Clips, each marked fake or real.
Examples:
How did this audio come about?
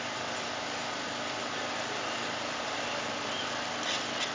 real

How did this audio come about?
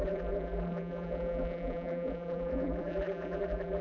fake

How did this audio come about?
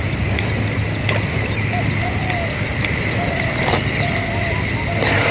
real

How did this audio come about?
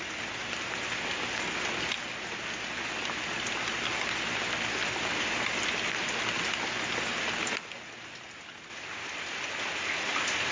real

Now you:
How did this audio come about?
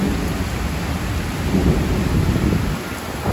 real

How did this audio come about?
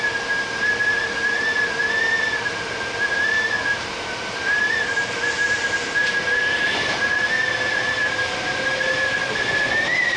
fake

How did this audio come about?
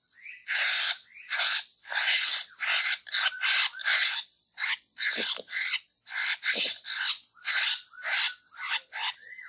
fake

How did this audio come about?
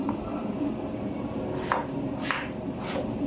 fake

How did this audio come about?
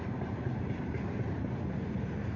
fake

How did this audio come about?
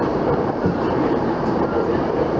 fake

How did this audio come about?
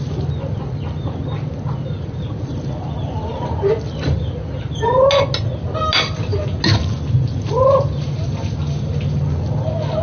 real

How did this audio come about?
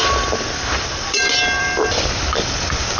fake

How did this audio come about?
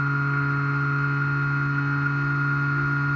real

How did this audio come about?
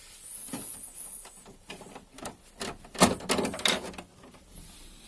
real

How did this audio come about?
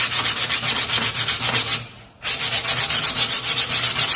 real